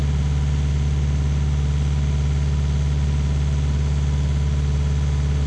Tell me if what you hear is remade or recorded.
recorded